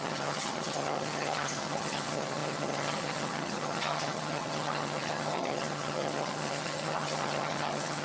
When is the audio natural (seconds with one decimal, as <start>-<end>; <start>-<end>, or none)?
none